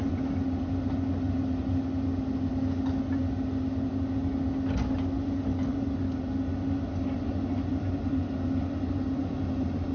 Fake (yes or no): no